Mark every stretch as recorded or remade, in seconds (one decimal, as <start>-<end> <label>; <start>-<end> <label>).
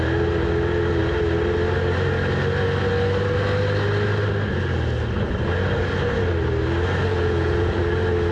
0.0-7.1 recorded; 7.1-7.8 remade; 7.8-8.3 recorded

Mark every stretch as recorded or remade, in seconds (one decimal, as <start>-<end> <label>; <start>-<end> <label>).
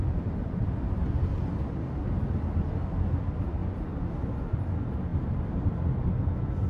0.0-6.7 recorded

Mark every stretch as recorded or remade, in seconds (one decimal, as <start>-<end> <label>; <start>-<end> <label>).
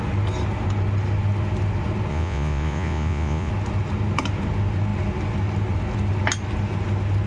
0.0-2.1 recorded; 2.1-3.5 remade; 3.5-7.3 recorded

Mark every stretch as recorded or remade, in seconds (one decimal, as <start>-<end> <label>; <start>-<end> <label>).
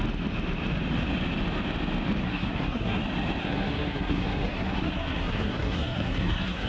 0.0-2.2 recorded; 2.2-3.0 remade; 3.0-3.4 recorded; 3.4-6.7 remade